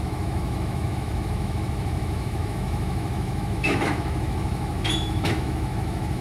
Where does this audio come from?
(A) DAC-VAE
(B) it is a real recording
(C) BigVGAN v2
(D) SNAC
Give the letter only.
A